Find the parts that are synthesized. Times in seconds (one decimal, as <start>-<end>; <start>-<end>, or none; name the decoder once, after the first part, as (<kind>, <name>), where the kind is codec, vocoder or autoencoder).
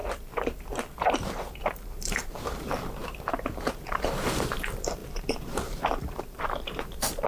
0.0-7.3 (vocoder, BigVGAN v2)